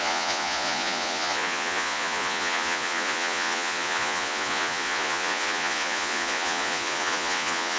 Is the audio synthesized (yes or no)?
yes